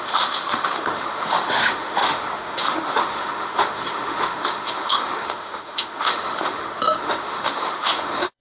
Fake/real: fake